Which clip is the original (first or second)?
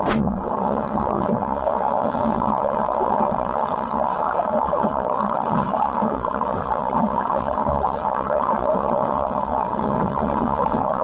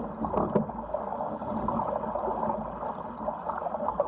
second